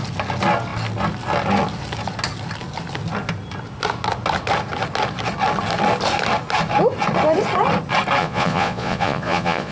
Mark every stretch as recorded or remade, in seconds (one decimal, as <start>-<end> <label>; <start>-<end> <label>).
0.0-8.2 recorded; 8.2-9.7 remade